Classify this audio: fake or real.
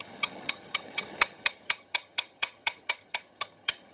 fake